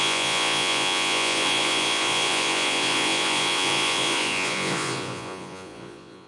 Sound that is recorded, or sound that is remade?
remade